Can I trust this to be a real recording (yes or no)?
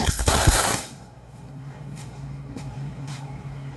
no